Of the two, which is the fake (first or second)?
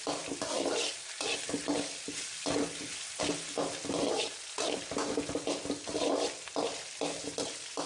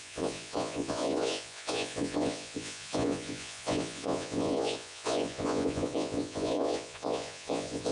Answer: second